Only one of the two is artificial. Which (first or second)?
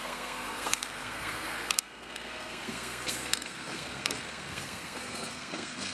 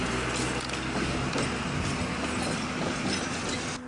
first